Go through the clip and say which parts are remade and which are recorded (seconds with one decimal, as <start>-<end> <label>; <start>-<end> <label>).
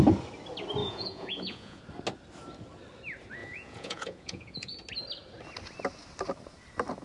0.0-0.8 recorded; 0.8-1.8 remade; 1.8-3.4 recorded; 3.4-4.8 remade; 4.8-7.0 recorded